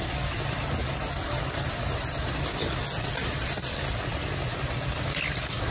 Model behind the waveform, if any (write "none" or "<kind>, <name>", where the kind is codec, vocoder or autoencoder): none